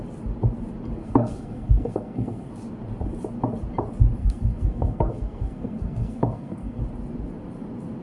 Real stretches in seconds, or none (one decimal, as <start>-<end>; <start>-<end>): 0.0-1.0; 2.5-4.2; 6.8-8.0